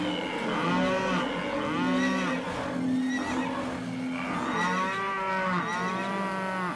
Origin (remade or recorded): recorded